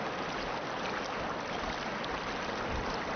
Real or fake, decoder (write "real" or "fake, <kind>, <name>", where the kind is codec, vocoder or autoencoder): real